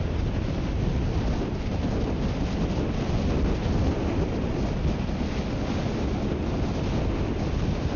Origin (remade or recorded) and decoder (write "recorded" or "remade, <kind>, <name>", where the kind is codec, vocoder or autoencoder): recorded